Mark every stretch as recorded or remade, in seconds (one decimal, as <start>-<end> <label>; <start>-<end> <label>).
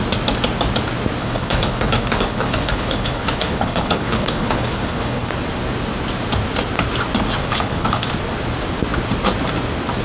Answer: 0.0-1.2 recorded; 1.2-5.3 remade; 5.3-7.4 recorded; 7.4-8.1 remade; 8.1-10.0 recorded